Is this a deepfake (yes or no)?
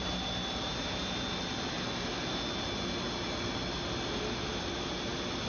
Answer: no